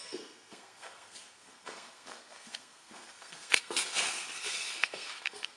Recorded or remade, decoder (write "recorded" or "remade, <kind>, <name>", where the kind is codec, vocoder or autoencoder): remade, codec, SNAC